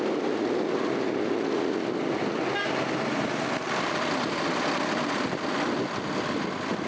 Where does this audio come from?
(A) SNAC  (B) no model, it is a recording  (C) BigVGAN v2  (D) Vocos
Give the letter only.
B